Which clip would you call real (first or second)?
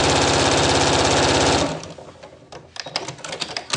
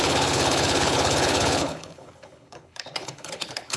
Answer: first